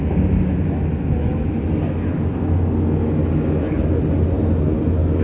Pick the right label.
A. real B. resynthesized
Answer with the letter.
A